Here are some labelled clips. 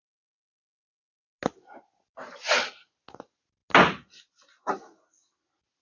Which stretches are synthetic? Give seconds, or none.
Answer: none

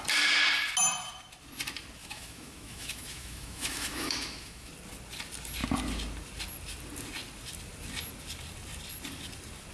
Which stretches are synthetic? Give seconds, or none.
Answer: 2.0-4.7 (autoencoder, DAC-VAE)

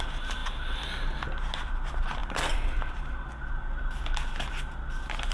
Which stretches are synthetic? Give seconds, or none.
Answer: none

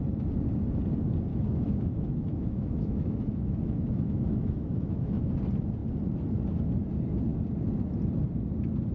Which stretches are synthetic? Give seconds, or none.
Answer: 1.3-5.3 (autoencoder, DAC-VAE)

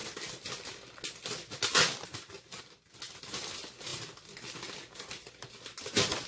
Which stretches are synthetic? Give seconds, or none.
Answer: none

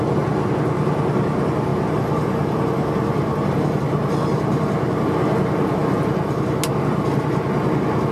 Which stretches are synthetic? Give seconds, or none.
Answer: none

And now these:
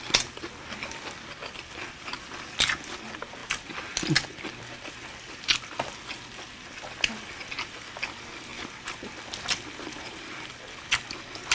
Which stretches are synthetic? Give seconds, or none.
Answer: none